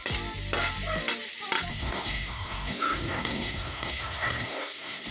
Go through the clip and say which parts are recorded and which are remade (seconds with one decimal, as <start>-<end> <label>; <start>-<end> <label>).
0.0-1.7 recorded; 1.7-5.1 remade